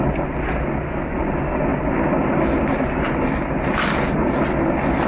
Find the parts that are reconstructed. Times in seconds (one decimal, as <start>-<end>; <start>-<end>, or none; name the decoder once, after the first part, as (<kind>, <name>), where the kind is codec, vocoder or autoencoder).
none